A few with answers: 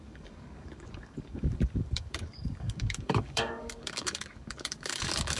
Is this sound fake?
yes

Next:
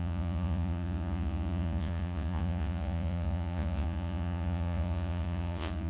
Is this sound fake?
yes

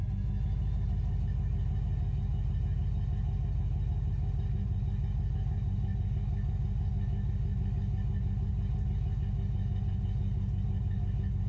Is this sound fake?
no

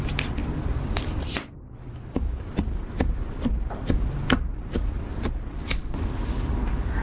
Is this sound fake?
no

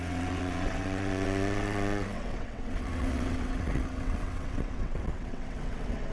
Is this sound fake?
yes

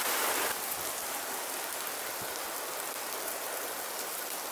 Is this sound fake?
no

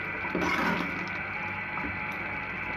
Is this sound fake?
no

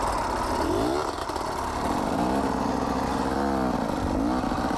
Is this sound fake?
no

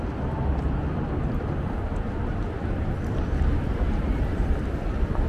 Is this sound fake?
yes